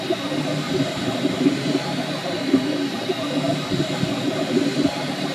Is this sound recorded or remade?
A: recorded